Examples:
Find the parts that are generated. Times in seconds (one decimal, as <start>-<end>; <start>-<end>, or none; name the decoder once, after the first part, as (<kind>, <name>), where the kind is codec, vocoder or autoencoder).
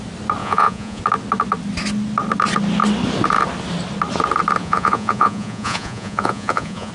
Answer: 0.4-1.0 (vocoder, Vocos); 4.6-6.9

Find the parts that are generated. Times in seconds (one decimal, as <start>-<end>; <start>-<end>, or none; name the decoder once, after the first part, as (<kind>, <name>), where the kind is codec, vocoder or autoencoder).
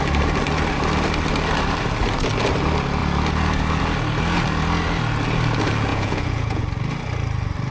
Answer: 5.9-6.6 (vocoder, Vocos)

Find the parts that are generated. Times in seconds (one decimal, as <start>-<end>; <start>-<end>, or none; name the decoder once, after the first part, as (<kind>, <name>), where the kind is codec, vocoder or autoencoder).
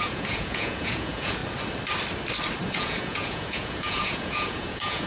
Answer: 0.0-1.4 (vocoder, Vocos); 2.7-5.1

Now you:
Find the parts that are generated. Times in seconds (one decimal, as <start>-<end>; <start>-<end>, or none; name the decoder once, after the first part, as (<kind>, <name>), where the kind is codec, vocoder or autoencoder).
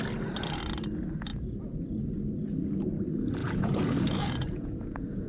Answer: 1.3-1.8 (vocoder, Vocos); 3.4-5.3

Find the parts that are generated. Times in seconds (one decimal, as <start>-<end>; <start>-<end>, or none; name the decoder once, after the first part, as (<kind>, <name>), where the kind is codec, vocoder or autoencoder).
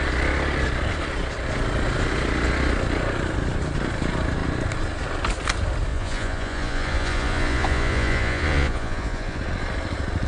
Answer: 5.9-9.4 (vocoder, Vocos)